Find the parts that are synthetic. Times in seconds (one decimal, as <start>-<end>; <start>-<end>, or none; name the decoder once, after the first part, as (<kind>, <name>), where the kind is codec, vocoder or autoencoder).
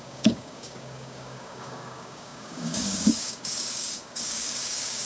0.0-5.1 (codec, DAC)